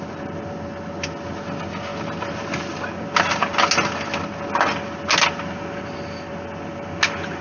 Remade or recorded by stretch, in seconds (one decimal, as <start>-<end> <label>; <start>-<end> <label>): 0.0-7.4 recorded